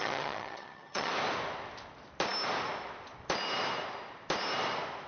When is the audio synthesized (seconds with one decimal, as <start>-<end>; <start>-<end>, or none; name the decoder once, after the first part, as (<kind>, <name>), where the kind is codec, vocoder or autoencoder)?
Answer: 0.0-1.1 (vocoder, HiFi-GAN)